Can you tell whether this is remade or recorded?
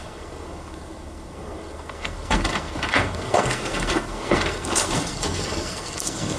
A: remade